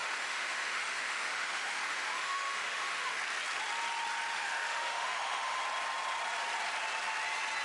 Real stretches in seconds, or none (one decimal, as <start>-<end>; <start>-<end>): 3.2-4.3; 5.6-7.6